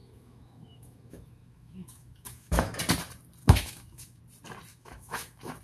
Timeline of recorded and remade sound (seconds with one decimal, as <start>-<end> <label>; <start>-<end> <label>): 0.0-2.8 remade; 2.8-3.4 recorded; 3.4-4.2 remade; 4.2-4.7 recorded; 4.7-5.6 remade